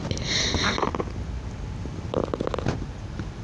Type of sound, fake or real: real